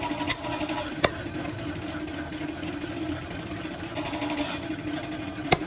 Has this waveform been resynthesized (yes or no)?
no